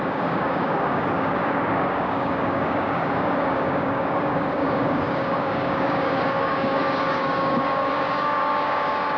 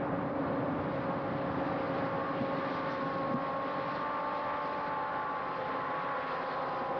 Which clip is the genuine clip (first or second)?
second